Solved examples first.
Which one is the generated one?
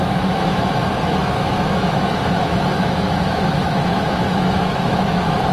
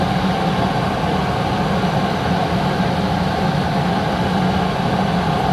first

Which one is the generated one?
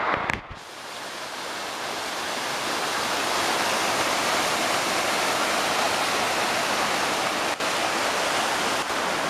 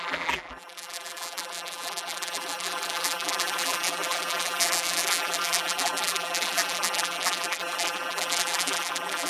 second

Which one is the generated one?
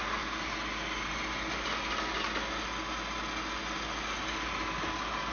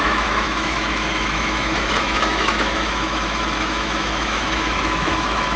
second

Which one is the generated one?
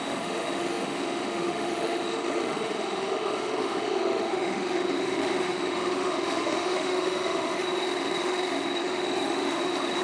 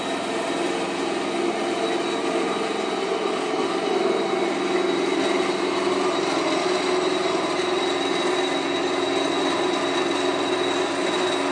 first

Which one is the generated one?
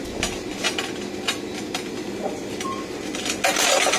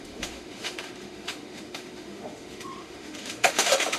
second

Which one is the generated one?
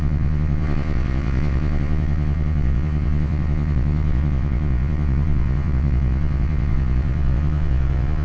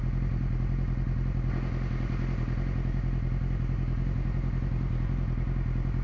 first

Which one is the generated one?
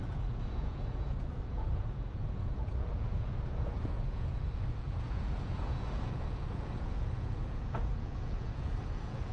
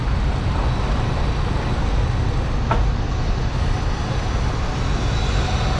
first